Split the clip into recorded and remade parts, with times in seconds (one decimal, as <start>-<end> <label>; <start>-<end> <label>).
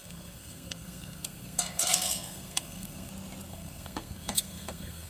0.0-3.1 remade; 3.1-3.5 recorded; 3.5-5.1 remade